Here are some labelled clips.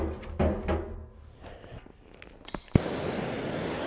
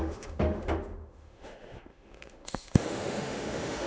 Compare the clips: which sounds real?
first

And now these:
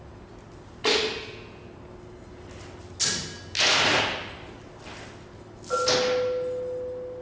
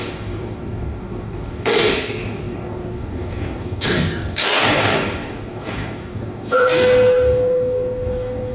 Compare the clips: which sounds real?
first